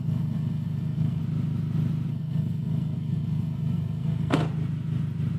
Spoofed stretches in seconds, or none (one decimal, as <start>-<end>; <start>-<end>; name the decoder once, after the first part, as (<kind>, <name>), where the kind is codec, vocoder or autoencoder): 0.0-1.2 (codec, SNAC); 2.1-4.4